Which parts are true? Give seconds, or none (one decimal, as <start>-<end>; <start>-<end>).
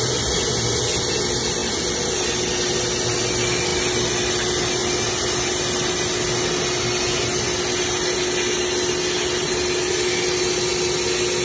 0.0-1.6; 2.2-11.4